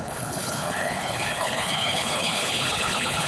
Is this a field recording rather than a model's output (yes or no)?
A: no